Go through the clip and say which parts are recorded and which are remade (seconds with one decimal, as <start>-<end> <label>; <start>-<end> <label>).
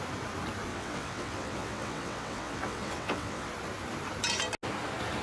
0.0-0.7 recorded; 0.7-3.5 remade; 3.5-5.2 recorded